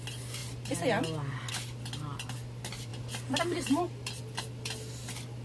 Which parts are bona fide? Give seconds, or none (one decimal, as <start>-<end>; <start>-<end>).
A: 0.0-5.4